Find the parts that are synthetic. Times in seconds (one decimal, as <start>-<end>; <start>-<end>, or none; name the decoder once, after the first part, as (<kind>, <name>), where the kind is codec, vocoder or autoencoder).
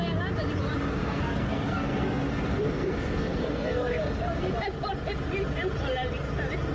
1.0-4.5 (codec, SNAC)